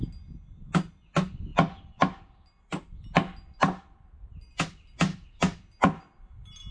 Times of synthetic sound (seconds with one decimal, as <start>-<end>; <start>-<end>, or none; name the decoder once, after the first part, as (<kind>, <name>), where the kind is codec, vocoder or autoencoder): none